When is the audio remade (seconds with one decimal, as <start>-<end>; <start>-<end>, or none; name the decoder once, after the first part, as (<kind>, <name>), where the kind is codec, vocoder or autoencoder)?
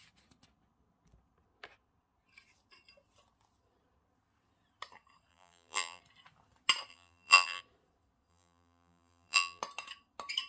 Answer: 5.3-6.0 (vocoder, BigVGAN v2); 6.9-7.6; 8.3-9.6